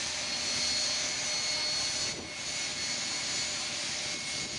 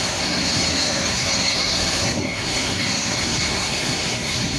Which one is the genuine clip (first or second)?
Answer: first